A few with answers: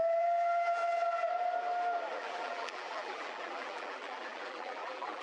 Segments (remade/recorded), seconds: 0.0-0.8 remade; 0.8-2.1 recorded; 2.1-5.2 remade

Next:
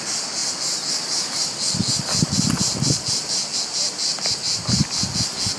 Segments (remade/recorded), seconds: 0.0-5.6 recorded

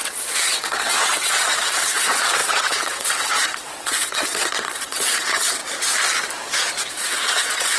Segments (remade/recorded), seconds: 0.0-5.6 remade; 5.6-6.9 recorded; 6.9-7.8 remade

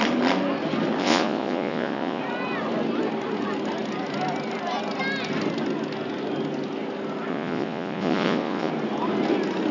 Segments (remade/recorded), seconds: 0.0-1.0 recorded; 1.0-2.2 remade; 2.2-7.3 recorded; 7.3-8.7 remade; 8.7-9.7 recorded

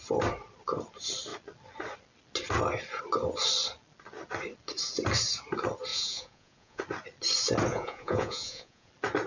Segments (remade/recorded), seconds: 0.0-5.9 recorded; 5.9-6.8 remade; 6.8-7.7 recorded; 7.7-8.9 remade; 8.9-9.3 recorded

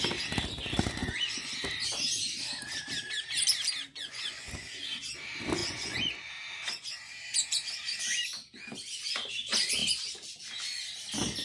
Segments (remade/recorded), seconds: 0.0-1.0 recorded; 1.0-1.5 remade; 1.5-3.9 recorded; 3.9-4.5 remade; 4.5-5.6 recorded; 5.6-6.3 remade; 6.3-11.4 recorded

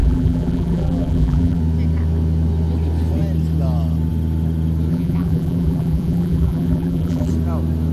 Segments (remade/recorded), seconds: 0.0-1.6 remade; 1.6-4.9 recorded; 4.9-7.3 remade; 7.3-7.9 recorded

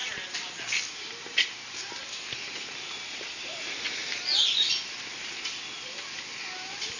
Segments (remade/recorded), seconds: 0.0-7.0 recorded